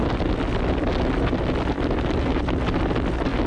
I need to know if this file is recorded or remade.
recorded